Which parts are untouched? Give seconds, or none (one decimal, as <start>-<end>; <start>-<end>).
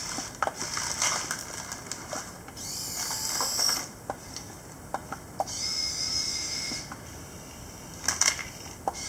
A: 0.0-9.1